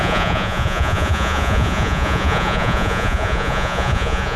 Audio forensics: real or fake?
fake